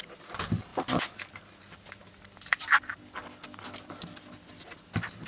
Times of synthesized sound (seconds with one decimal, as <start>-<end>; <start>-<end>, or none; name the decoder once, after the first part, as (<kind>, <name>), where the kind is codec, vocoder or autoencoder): none